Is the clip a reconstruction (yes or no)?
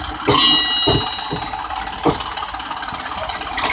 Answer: no